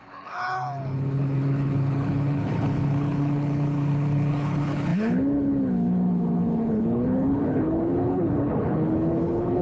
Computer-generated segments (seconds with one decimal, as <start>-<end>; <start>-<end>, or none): 0.0-9.6